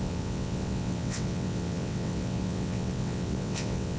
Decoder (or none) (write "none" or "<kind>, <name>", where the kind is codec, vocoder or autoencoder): vocoder, WaveNeXt